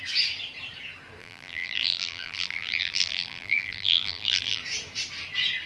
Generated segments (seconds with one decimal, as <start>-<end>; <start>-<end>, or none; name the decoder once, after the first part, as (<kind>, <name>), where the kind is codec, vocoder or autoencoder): 1.2-4.6 (vocoder, BigVGAN v2)